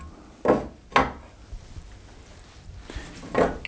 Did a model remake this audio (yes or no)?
no